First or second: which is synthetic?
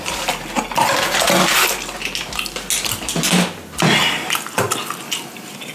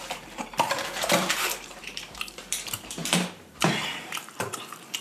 second